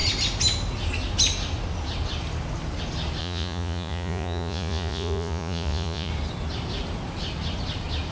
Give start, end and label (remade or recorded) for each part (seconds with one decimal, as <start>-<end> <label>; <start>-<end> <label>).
0.0-3.2 recorded; 3.2-6.1 remade; 6.1-8.1 recorded